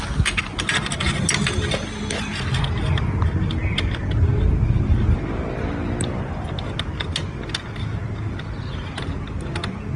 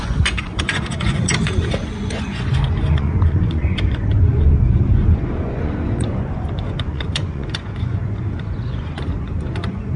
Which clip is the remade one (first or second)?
second